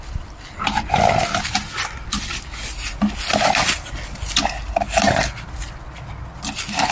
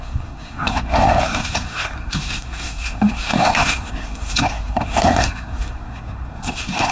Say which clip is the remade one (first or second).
second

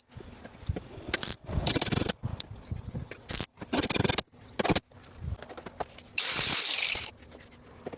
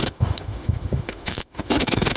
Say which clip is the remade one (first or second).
second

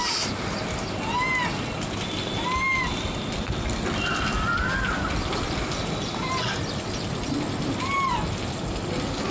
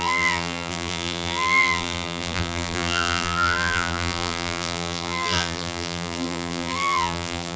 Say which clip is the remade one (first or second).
second